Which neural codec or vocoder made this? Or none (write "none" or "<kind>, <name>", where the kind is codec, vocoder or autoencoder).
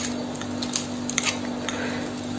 none